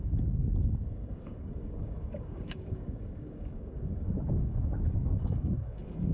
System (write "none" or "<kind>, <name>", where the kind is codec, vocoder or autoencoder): codec, DAC